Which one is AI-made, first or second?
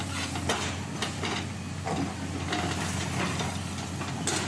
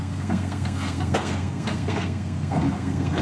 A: second